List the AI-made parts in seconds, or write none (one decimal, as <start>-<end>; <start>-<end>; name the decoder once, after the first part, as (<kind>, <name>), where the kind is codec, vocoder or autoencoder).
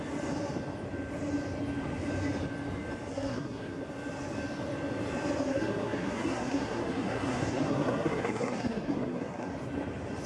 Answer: 3.1-3.8 (codec, SNAC); 5.5-9.5